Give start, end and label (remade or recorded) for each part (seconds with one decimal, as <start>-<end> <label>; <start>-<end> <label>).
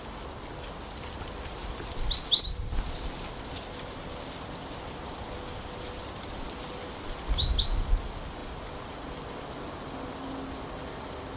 0.0-11.4 recorded